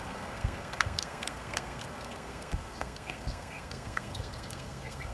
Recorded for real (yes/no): no